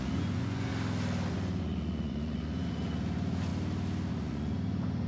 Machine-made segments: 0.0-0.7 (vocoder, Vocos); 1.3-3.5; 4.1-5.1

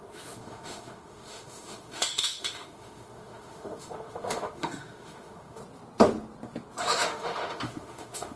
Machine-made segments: 0.0-5.6 (autoencoder, DAC-VAE); 6.8-8.4

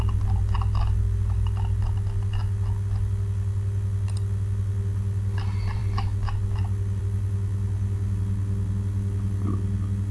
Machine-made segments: none

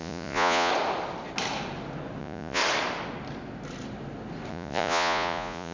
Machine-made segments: 0.0-0.7 (vocoder, Vocos); 2.2-2.6; 4.5-5.7

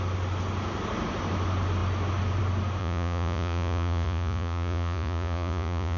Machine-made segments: 2.8-6.0 (vocoder, Vocos)

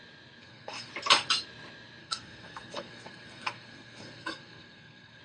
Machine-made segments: 0.4-0.9 (codec, SNAC); 2.0-5.2

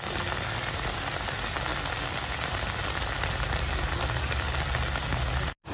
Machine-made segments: none